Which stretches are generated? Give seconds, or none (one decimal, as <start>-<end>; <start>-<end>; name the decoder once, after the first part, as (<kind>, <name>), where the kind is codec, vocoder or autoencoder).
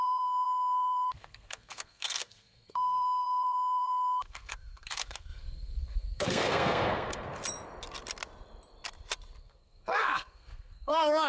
0.0-7.3 (codec, SNAC); 9.4-11.3